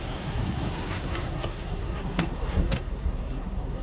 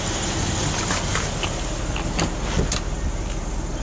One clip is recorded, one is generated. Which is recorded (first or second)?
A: second